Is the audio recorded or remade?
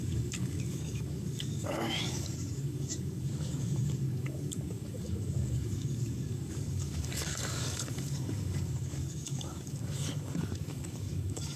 remade